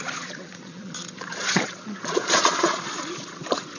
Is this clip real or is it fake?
fake